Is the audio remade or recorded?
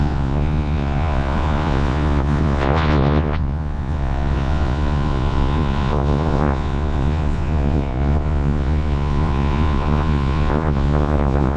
remade